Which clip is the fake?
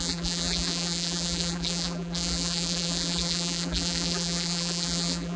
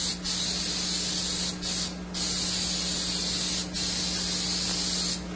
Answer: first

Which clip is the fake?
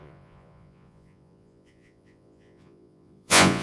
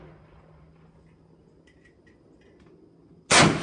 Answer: first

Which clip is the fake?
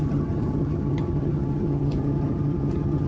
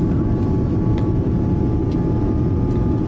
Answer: first